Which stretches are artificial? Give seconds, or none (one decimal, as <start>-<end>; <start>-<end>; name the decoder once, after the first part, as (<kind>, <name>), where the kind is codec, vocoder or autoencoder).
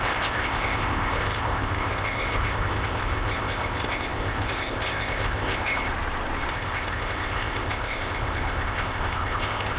0.0-5.9 (codec, ZipCodec); 6.5-9.8